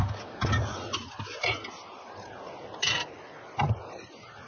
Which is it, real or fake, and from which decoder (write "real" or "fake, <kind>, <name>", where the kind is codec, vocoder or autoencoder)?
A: real